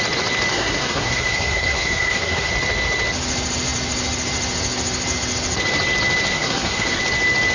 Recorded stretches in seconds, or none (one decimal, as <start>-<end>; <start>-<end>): 0.0-0.5; 2.5-6.3; 7.0-7.5